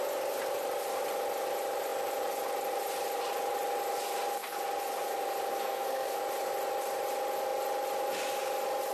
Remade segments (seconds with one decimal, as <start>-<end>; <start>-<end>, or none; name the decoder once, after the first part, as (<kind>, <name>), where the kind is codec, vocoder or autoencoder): 5.5-6.2 (codec, SNAC)